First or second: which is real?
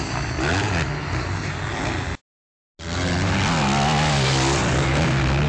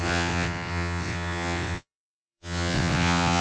first